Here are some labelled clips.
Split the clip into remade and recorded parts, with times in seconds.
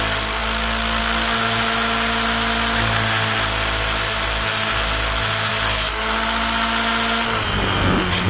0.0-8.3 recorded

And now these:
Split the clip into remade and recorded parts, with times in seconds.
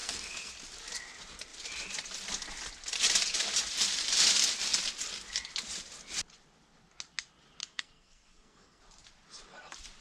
0.0-0.5 remade; 0.5-7.6 recorded; 7.6-8.8 remade; 8.8-10.0 recorded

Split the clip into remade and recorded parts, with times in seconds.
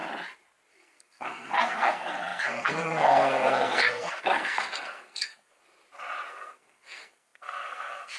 0.0-0.7 recorded; 0.7-5.6 remade; 5.6-6.3 recorded; 6.3-8.2 remade